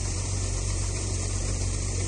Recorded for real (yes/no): no